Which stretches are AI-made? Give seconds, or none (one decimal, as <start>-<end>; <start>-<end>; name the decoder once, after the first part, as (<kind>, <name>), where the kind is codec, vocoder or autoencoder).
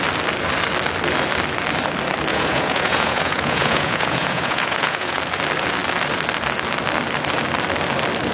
2.3-5.2 (vocoder, Vocos)